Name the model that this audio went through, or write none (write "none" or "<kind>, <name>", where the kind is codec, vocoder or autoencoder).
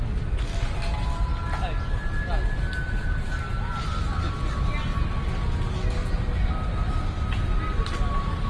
none